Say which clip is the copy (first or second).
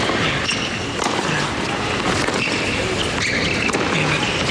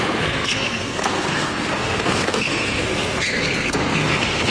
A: second